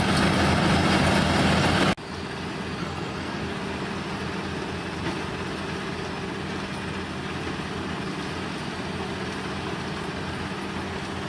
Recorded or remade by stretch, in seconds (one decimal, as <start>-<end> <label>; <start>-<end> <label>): 0.0-2.8 recorded; 2.8-3.4 remade; 3.4-11.3 recorded